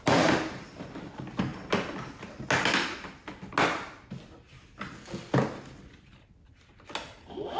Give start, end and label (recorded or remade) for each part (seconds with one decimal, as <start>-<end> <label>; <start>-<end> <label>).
0.0-7.6 recorded